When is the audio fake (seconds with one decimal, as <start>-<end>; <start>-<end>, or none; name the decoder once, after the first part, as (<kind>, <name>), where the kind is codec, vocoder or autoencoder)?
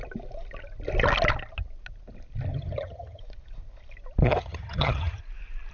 2.5-3.2 (vocoder, HiFi-GAN); 4.2-5.2